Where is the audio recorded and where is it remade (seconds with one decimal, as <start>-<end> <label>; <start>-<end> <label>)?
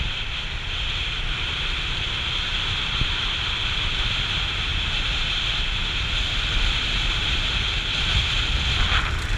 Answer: 0.0-9.4 recorded